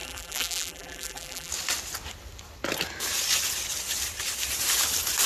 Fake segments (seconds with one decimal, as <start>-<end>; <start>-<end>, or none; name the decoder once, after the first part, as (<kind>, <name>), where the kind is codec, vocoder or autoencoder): 0.0-1.5 (vocoder, BigVGAN v2)